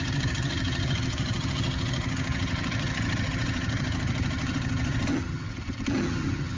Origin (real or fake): fake